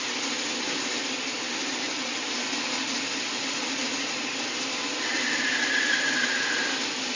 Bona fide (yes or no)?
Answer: yes